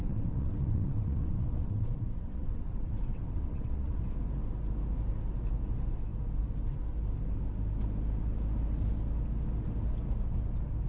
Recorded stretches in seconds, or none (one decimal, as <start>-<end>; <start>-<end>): 4.0-10.9